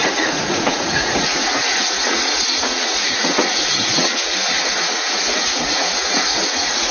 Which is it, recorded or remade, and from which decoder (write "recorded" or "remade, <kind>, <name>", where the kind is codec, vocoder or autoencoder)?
remade, vocoder, Vocos